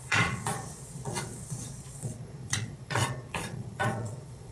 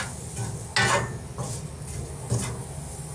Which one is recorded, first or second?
second